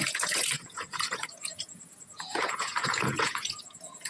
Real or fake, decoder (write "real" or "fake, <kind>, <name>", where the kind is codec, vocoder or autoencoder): fake, vocoder, Vocos